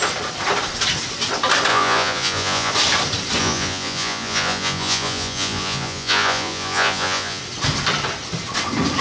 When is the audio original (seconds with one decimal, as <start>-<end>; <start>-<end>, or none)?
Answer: 0.0-1.7; 2.7-3.4; 7.4-9.0